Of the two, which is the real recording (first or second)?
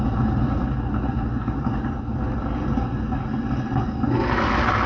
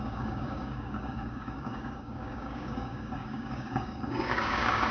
first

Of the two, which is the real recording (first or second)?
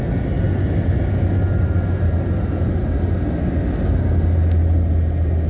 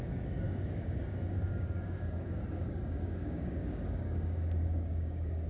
first